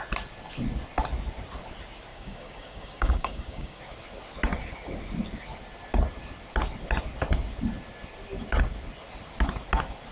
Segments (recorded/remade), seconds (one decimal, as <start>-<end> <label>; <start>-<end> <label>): 0.0-2.1 recorded; 2.1-3.8 remade; 3.8-10.1 recorded